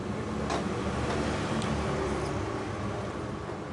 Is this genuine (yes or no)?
yes